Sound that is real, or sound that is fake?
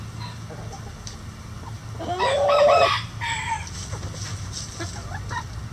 real